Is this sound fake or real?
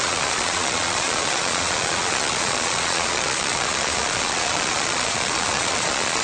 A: fake